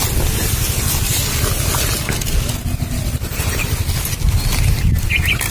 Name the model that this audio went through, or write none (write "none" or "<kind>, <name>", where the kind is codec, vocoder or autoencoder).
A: none